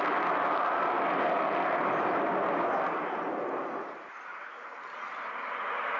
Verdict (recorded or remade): recorded